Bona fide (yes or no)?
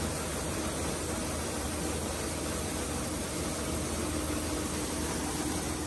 yes